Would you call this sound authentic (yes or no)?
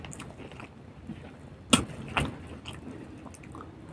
yes